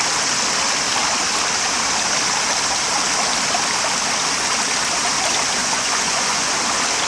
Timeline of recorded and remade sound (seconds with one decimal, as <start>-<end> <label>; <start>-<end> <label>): 0.0-5.6 recorded; 5.6-6.5 remade; 6.5-7.1 recorded